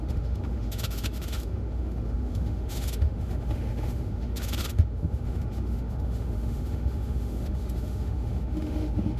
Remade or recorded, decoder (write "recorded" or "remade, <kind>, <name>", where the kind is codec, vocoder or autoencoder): remade, autoencoder, DAC-VAE